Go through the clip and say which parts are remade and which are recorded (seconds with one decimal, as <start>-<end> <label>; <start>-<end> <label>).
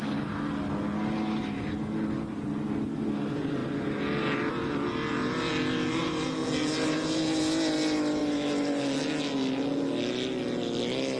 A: 0.0-11.2 recorded